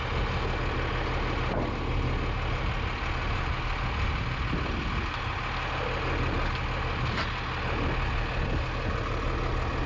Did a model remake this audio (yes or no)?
no